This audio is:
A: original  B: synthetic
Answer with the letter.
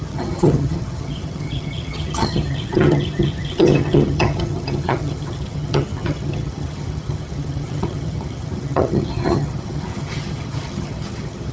B